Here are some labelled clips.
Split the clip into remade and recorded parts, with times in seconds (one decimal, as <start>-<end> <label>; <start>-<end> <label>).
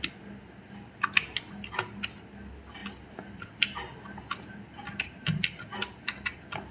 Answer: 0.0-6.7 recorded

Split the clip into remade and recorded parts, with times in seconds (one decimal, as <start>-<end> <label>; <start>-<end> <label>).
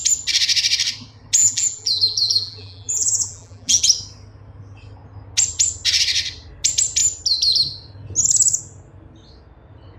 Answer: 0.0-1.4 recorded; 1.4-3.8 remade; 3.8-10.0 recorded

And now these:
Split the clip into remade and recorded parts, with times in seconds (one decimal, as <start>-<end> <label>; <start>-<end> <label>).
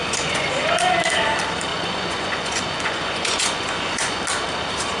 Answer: 0.0-0.7 remade; 0.7-1.7 recorded; 1.7-4.2 remade; 4.2-5.0 recorded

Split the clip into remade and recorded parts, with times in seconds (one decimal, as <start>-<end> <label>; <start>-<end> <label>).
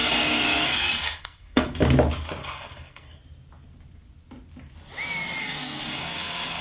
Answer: 0.0-1.8 remade; 1.8-2.4 recorded; 2.4-3.2 remade; 3.2-5.4 recorded; 5.4-6.6 remade